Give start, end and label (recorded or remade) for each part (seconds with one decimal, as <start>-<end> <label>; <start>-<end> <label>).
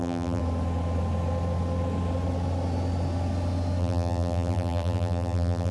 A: 0.0-0.4 remade; 0.4-3.8 recorded; 3.8-5.7 remade